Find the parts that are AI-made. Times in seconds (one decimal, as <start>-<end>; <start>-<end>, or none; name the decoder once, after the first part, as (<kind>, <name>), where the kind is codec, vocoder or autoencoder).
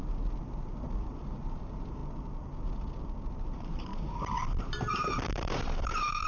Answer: 1.1-2.0 (vocoder, BigVGAN v2); 3.3-3.9; 4.6-6.3